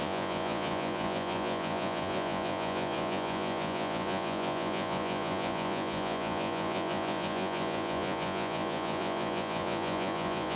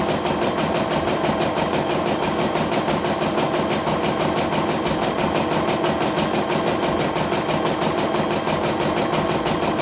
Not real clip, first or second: first